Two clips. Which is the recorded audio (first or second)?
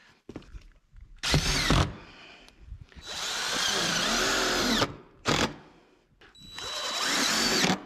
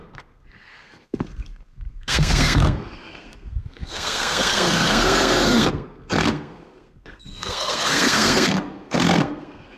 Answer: first